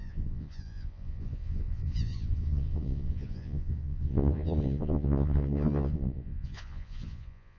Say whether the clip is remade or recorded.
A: remade